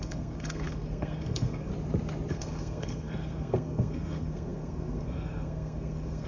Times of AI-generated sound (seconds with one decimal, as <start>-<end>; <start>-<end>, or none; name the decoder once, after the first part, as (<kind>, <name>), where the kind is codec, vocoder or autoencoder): 0.0-1.7 (codec, SNAC); 2.3-6.3